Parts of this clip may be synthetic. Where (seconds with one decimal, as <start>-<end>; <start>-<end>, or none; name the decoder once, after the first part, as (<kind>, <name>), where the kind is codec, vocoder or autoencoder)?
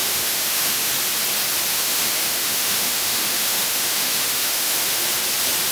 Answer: 0.0-0.9 (autoencoder, DAC-VAE); 1.7-5.1